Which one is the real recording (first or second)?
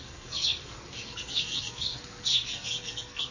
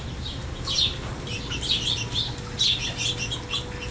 second